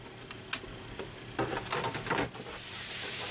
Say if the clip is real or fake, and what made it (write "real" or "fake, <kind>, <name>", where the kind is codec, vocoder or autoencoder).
real